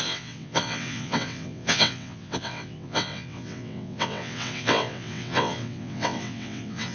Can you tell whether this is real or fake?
fake